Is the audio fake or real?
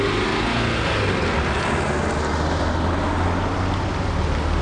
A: real